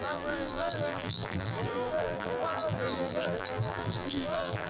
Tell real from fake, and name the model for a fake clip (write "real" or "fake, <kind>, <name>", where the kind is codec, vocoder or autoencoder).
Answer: fake, vocoder, BigVGAN v2